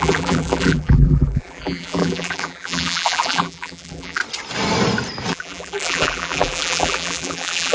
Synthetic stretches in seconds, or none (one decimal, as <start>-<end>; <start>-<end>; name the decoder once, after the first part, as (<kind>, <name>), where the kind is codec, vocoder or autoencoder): 0.0-4.2 (vocoder, BigVGAN v2); 5.3-7.7